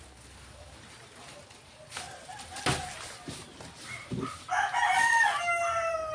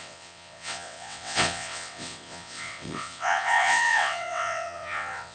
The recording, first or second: first